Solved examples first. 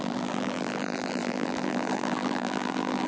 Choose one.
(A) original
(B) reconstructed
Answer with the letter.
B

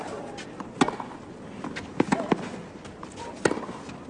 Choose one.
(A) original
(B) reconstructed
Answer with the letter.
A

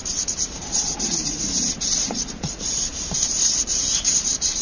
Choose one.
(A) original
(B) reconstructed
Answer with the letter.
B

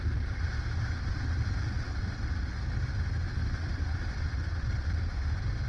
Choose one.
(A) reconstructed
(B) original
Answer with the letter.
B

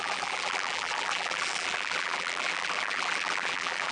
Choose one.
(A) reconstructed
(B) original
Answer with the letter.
A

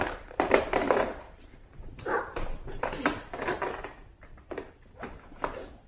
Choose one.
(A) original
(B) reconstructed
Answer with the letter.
B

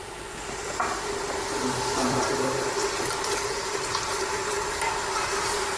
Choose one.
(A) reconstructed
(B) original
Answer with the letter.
A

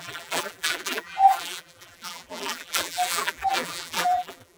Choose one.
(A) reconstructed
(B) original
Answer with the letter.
A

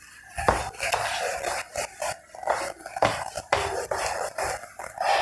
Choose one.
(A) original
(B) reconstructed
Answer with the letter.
A